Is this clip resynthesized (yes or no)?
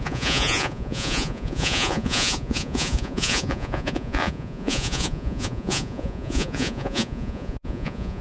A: yes